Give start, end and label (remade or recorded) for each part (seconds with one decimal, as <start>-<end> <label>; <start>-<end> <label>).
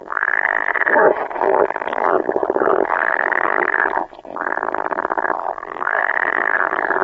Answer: 0.0-0.7 remade; 0.7-1.4 recorded; 1.4-7.0 remade